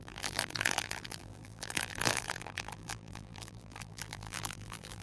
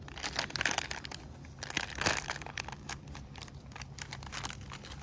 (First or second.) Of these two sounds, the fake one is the first